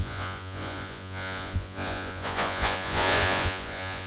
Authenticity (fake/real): fake